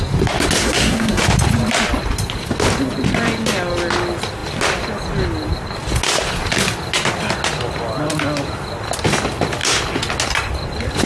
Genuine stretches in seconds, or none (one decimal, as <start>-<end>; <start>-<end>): 0.0-0.6; 1.2-11.1